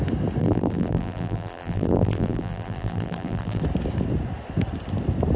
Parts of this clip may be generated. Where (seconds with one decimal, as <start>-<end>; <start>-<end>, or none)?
0.4-3.6